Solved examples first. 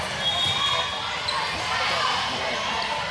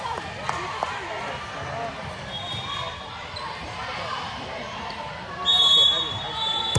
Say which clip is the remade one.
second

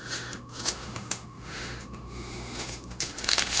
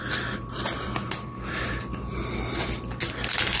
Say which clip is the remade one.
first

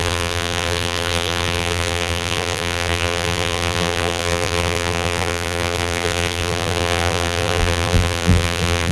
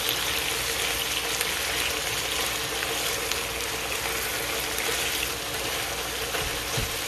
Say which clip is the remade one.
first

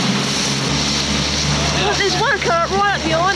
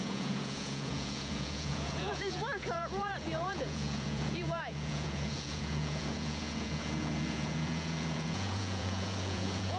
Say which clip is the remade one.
second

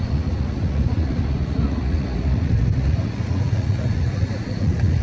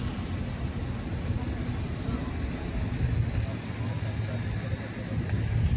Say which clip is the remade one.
first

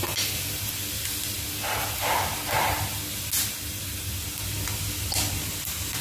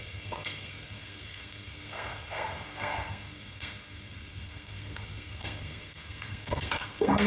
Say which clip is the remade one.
second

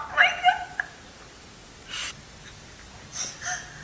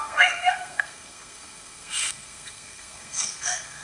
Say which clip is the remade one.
second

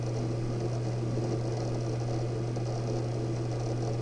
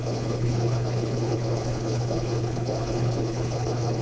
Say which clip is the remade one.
second